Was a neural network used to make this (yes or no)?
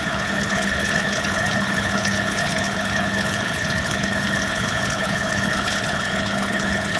yes